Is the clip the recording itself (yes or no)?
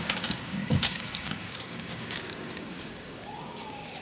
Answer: no